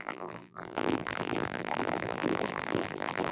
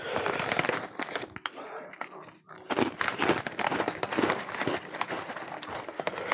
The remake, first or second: first